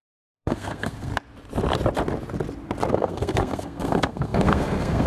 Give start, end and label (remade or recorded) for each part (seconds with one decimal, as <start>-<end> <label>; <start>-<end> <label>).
0.0-1.1 remade; 1.1-2.9 recorded; 2.9-5.1 remade